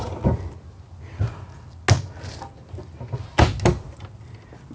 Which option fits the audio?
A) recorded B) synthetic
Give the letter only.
A